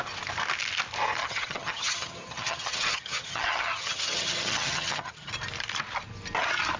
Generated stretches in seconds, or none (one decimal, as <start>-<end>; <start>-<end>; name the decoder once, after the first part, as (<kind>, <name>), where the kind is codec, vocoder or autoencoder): 1.2-5.3 (vocoder, HiFi-GAN)